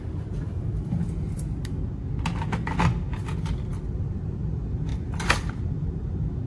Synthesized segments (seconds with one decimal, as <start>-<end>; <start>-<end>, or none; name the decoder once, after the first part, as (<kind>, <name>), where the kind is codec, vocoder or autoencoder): 0.0-0.5 (vocoder, BigVGAN v2); 3.7-6.5